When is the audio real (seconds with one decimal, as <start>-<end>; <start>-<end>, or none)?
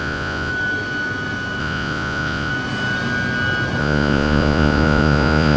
0.5-1.6; 2.5-3.8